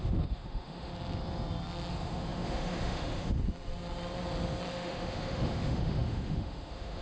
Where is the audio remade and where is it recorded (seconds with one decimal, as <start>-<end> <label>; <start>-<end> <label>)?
0.0-0.9 remade; 0.9-1.9 recorded; 1.9-3.4 remade; 3.4-4.7 recorded; 4.7-7.0 remade